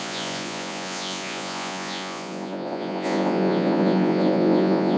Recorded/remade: remade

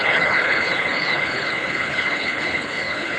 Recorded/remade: remade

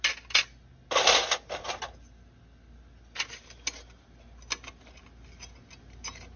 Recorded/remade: recorded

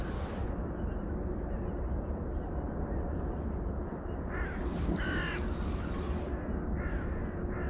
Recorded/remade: recorded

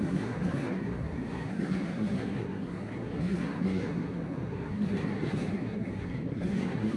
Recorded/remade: remade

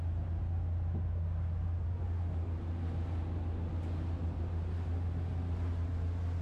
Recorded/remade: recorded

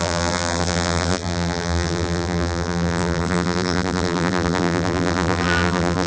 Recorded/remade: remade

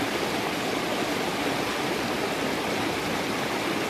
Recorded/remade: recorded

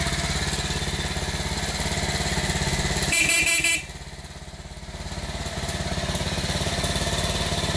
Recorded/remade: recorded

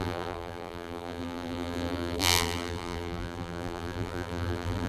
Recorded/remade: remade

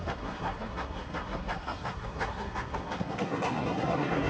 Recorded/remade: remade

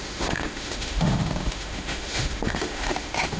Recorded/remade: remade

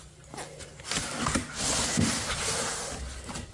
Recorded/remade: recorded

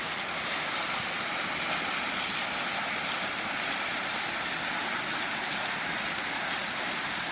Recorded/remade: recorded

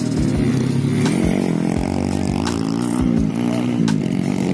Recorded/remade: recorded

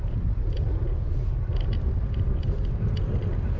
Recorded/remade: recorded